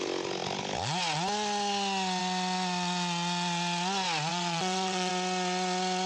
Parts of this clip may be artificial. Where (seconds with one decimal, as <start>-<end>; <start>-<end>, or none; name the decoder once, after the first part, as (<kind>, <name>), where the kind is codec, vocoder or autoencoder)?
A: 4.3-5.1 (vocoder, WaveNeXt)